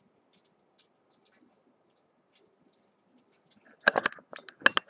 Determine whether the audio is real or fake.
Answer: real